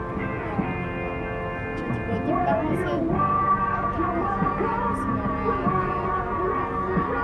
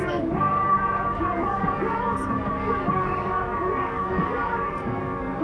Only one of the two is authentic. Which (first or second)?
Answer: first